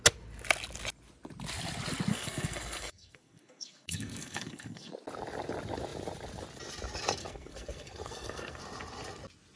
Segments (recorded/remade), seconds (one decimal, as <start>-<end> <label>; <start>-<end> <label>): 0.0-2.1 recorded; 2.1-4.9 remade; 4.9-7.2 recorded; 7.2-8.6 remade; 8.6-9.6 recorded